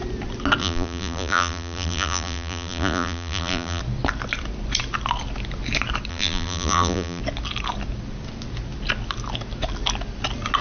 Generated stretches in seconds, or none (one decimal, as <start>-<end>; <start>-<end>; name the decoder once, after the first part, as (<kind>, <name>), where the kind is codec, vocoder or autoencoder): 0.6-3.8 (vocoder, BigVGAN v2); 6.1-7.2